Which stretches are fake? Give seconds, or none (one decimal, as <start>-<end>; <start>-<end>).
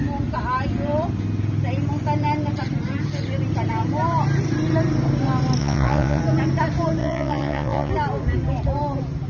5.6-6.2; 7.0-7.9